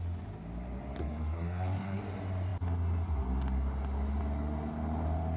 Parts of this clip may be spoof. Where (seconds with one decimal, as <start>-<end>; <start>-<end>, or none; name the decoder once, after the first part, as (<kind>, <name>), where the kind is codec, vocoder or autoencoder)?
1.0-2.0 (codec, SNAC)